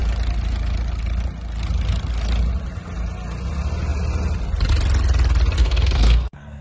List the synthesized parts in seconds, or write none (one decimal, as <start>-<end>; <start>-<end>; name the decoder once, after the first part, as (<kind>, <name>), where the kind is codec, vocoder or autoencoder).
5.6-6.6 (codec, SNAC)